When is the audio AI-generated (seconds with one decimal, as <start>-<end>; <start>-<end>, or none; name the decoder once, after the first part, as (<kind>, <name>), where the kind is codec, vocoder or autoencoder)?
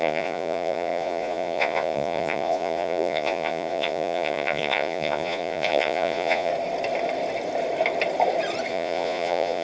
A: 0.0-6.5 (vocoder, Vocos); 8.7-9.6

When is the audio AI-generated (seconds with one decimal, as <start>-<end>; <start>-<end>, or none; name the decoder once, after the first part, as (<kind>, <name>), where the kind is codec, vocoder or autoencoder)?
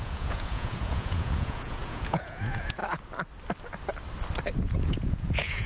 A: 0.0-2.8 (vocoder, Vocos); 4.6-5.7